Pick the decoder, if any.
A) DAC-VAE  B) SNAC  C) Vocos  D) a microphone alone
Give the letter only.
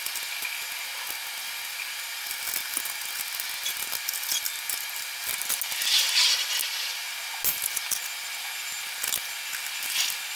D